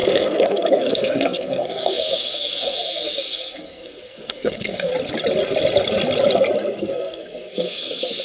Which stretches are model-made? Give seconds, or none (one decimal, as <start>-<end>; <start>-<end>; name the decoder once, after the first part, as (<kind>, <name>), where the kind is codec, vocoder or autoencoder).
0.0-4.9 (codec, SNAC); 6.8-8.2